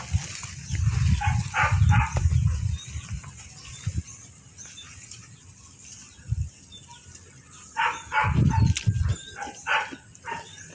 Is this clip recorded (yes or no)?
yes